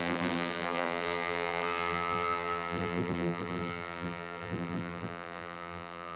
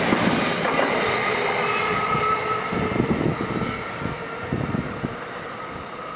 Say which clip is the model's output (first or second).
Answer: first